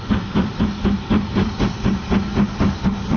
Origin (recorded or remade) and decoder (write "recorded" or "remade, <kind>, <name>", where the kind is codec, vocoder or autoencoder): recorded